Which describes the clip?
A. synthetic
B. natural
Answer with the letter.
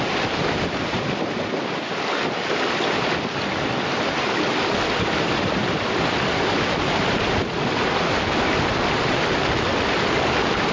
B